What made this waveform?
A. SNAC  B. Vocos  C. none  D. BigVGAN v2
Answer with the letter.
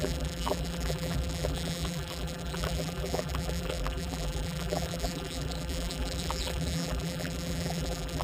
D